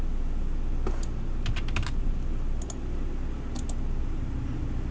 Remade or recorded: recorded